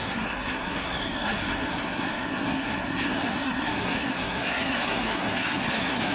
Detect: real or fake fake